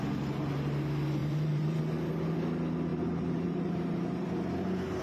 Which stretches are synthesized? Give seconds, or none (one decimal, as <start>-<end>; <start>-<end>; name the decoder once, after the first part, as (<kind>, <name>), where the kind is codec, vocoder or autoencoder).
1.2-1.8 (vocoder, BigVGAN v2); 2.9-4.3